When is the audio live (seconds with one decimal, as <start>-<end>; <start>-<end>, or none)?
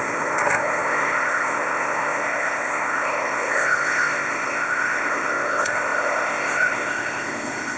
none